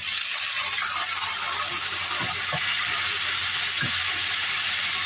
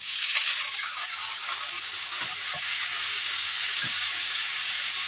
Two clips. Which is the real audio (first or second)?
first